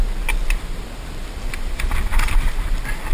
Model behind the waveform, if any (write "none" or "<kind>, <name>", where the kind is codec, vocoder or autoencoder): none